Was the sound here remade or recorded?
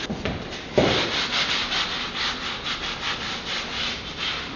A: recorded